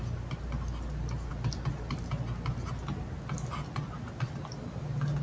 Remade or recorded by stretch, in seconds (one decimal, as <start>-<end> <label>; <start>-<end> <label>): 0.0-5.2 recorded